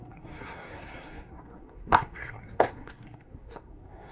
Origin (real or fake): fake